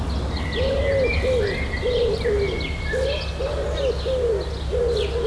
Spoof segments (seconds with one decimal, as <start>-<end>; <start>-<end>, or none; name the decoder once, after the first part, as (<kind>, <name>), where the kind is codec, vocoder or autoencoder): none